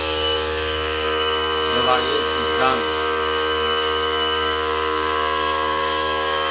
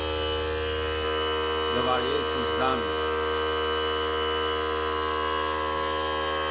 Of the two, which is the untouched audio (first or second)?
second